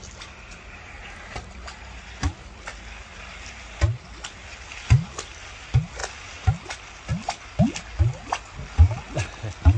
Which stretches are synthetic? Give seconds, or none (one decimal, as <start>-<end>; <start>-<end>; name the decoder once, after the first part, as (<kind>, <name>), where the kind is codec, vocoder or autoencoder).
none